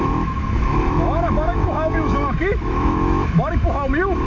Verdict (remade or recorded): remade